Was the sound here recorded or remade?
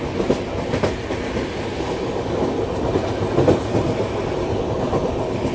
recorded